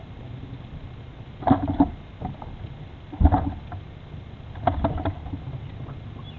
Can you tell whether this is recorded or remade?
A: recorded